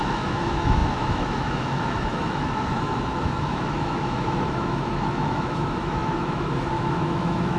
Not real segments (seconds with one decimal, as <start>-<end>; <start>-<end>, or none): 0.0-7.6